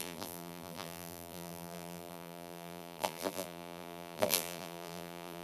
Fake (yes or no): yes